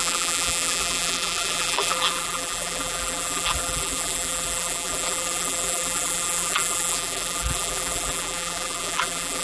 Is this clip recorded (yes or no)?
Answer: no